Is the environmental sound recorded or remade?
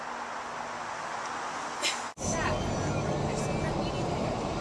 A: recorded